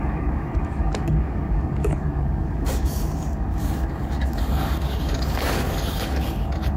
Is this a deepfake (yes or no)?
yes